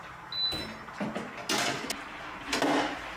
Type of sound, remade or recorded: recorded